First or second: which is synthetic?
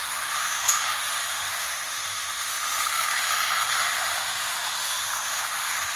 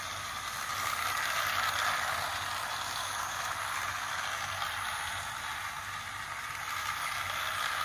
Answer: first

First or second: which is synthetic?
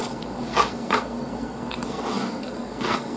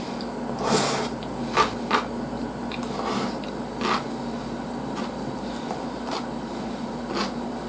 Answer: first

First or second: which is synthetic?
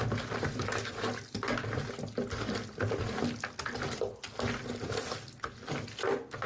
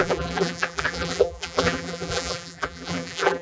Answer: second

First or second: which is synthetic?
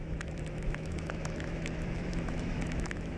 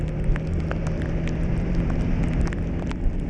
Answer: first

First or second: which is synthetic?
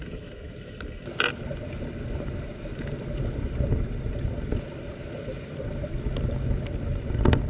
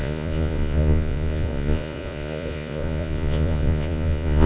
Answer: second